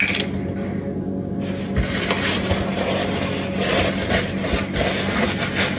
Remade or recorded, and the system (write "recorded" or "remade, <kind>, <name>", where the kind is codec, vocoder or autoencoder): recorded